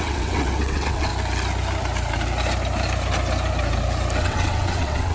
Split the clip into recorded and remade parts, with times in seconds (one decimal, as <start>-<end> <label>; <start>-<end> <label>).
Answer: 0.0-1.1 remade; 1.1-4.2 recorded; 4.2-5.1 remade